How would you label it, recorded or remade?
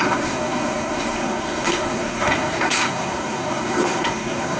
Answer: remade